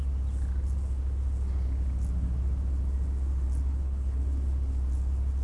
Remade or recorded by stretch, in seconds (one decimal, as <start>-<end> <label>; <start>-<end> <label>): 0.0-3.7 recorded; 3.7-4.2 remade; 4.2-5.4 recorded